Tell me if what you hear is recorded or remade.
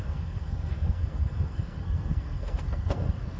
remade